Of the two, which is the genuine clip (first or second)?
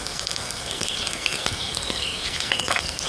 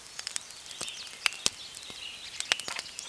second